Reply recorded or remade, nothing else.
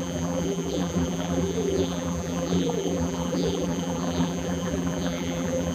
remade